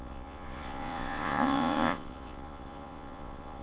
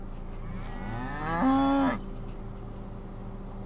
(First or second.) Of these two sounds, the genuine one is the second